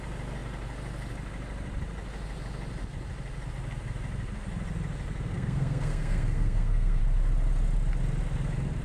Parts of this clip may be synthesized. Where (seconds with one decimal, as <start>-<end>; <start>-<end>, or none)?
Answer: 5.3-7.0